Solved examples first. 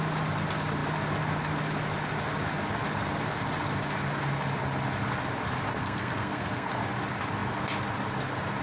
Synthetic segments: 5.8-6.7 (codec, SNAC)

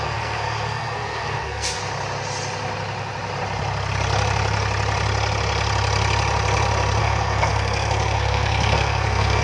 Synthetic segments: 0.0-1.8 (codec, SNAC); 7.0-9.4

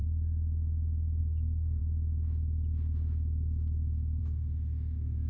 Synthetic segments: 1.2-1.8 (codec, SNAC); 4.2-5.3

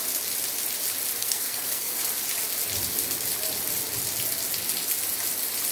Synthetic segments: 1.2-2.0 (codec, SNAC)

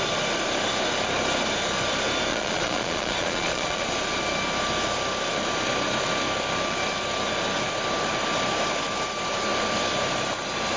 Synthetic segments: 2.3-3.9 (vocoder, Vocos)